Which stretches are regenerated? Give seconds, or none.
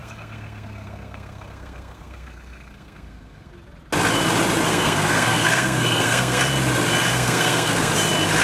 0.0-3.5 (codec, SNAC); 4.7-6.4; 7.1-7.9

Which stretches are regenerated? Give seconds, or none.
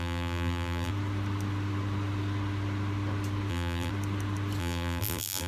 0.0-0.9 (vocoder, BigVGAN v2); 3.5-3.9; 4.6-5.5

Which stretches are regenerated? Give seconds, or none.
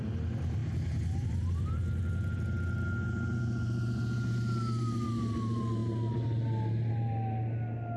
none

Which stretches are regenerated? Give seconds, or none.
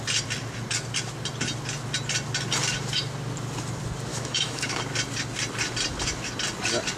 4.1-4.8 (autoencoder, DAC-VAE)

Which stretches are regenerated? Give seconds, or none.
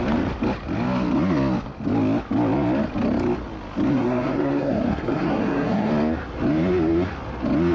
3.9-5.9 (codec, SNAC)